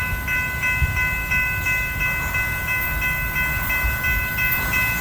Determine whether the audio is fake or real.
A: real